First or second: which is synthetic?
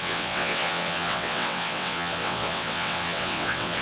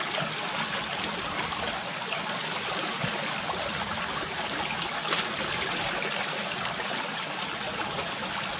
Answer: first